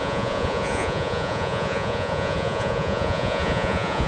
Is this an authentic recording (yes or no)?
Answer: no